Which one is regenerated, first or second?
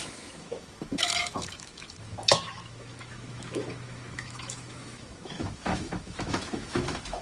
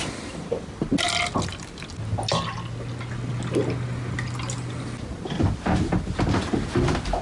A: first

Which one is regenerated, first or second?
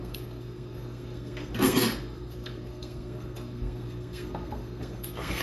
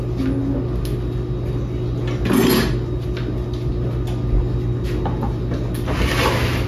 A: first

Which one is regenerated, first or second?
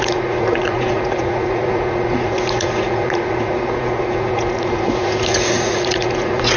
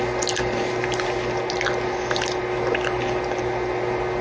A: first